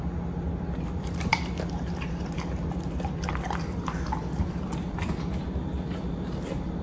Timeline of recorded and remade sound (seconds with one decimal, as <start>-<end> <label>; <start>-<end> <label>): 0.0-0.8 recorded; 0.8-6.8 remade